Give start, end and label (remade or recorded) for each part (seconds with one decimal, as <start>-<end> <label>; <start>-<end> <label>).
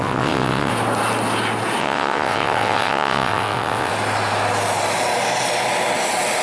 0.0-0.7 remade; 0.7-1.8 recorded; 1.8-3.9 remade; 3.9-6.4 recorded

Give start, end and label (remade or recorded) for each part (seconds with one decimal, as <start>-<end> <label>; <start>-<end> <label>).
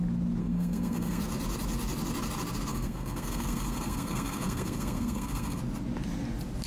0.0-0.4 recorded; 0.4-1.2 remade; 1.2-2.7 recorded; 2.7-5.6 remade; 5.6-6.7 recorded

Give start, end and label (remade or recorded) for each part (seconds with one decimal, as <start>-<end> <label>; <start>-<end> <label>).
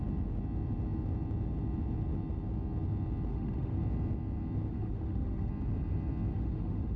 0.0-3.3 recorded; 3.3-3.8 remade; 3.8-4.7 recorded; 4.7-5.5 remade; 5.5-6.3 recorded; 6.3-7.0 remade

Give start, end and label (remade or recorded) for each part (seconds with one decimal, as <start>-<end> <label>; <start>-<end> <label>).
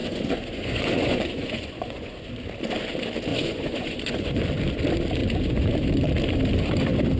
0.0-2.3 remade; 2.3-3.3 recorded; 3.3-4.4 remade; 4.4-5.2 recorded; 5.2-5.8 remade; 5.8-7.2 recorded